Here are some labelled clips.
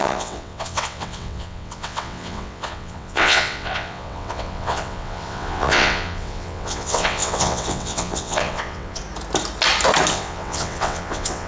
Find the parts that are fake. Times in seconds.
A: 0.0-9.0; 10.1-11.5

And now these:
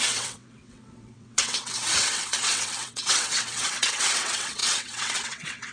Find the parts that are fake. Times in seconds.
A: 0.0-5.7

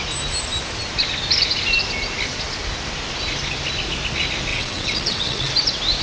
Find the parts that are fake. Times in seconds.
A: 4.5-5.5

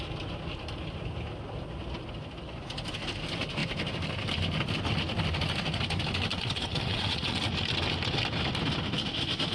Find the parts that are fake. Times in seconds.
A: 6.3-7.5